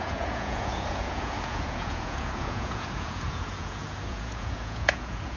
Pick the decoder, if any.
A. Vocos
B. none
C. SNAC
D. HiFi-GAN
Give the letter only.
A